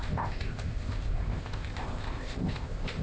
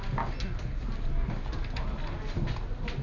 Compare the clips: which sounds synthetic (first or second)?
first